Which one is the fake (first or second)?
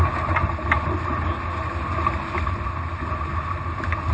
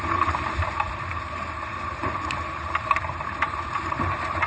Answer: second